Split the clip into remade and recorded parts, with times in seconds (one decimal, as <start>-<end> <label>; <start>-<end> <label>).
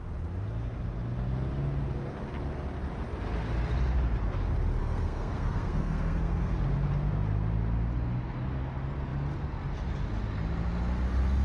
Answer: 0.0-4.8 recorded; 4.8-6.5 remade; 6.5-11.4 recorded